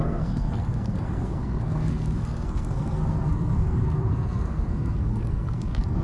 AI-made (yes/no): yes